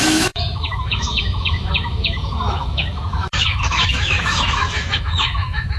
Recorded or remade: remade